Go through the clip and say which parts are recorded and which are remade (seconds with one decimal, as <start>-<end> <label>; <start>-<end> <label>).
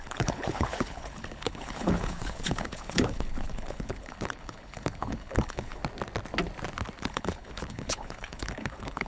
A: 0.0-5.8 remade; 5.8-7.0 recorded; 7.0-9.1 remade